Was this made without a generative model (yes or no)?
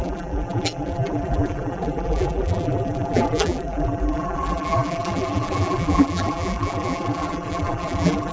no